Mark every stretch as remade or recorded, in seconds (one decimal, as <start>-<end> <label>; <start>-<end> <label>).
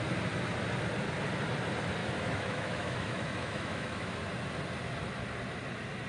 0.0-2.0 recorded; 2.0-4.2 remade; 4.2-6.1 recorded